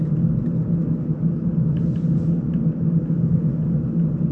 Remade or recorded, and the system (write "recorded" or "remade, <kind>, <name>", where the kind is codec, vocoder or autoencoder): recorded